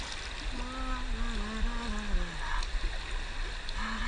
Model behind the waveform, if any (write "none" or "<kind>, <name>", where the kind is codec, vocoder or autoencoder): none